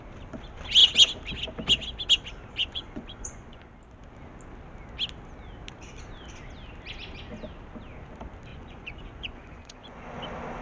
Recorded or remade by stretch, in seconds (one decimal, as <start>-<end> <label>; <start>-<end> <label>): 0.0-2.6 recorded; 2.6-3.6 remade; 3.6-8.5 recorded; 8.5-10.2 remade; 10.2-10.6 recorded